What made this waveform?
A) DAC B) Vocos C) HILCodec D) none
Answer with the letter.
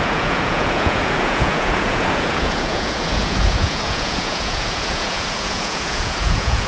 B